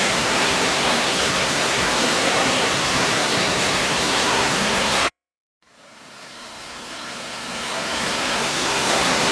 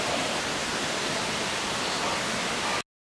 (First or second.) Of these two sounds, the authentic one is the second